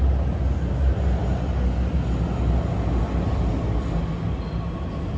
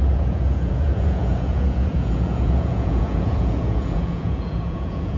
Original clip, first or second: first